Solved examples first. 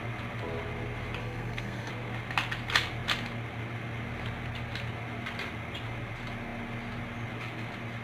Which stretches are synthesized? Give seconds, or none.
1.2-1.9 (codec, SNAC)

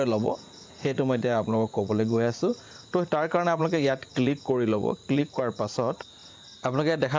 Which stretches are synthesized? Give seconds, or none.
0.0-2.5 (vocoder, Vocos); 3.6-6.2

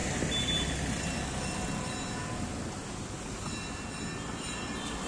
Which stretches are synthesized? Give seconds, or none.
none

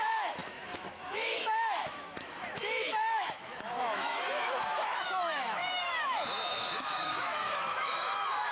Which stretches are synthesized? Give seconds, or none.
0.0-8.5 (autoencoder, DAC-VAE)

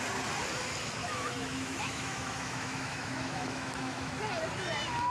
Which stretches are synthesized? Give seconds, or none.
1.0-4.1 (autoencoder, DAC-VAE)

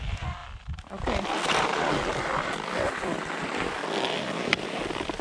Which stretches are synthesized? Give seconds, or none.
none